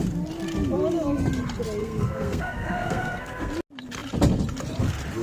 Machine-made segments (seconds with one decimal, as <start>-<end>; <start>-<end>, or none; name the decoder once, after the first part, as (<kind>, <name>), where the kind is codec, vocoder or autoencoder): 1.8-3.5 (codec, SNAC)